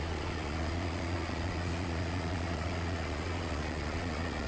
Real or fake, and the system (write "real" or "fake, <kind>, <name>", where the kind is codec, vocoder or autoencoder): fake, vocoder, Vocos